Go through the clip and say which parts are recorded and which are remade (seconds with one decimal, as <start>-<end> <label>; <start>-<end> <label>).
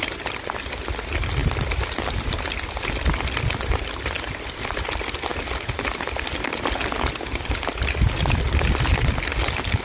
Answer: 0.0-9.8 recorded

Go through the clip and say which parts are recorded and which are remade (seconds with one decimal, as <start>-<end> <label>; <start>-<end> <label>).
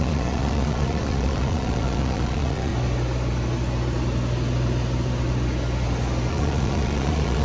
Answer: 0.0-2.7 remade; 2.7-6.3 recorded; 6.3-7.4 remade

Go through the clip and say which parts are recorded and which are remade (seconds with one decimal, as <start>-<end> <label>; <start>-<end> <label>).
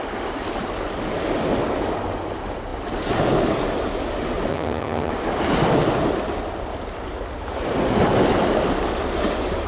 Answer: 0.0-4.5 recorded; 4.5-5.1 remade; 5.1-9.7 recorded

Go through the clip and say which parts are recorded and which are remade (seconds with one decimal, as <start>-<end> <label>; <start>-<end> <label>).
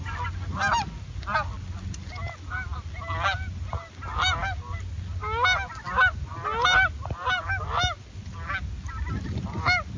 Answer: 0.0-10.0 recorded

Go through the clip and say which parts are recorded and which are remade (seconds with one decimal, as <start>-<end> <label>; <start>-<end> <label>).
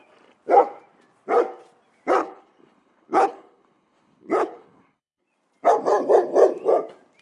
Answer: 0.0-2.2 recorded; 2.2-5.2 remade; 5.2-7.2 recorded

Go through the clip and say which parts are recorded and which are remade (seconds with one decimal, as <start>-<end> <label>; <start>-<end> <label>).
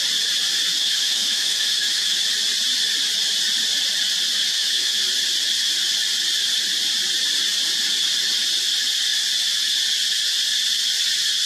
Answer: 0.0-0.7 recorded; 0.7-2.2 remade; 2.2-4.5 recorded; 4.5-5.0 remade; 5.0-11.5 recorded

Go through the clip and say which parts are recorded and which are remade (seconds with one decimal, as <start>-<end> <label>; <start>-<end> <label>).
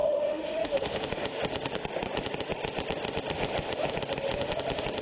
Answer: 0.0-1.0 remade; 1.0-5.0 recorded